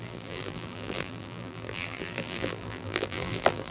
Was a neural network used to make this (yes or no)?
yes